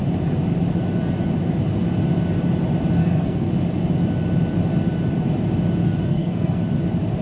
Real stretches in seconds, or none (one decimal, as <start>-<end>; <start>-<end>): 0.0-3.0; 3.5-5.8; 6.6-7.2